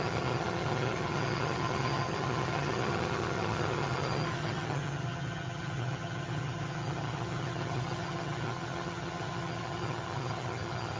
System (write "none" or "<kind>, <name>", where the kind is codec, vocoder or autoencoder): vocoder, HiFi-GAN